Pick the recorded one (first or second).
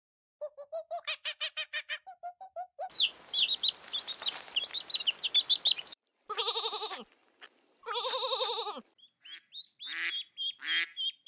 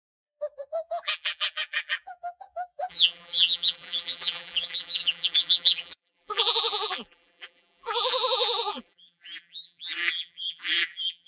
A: first